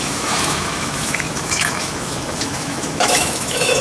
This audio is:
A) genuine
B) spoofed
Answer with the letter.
B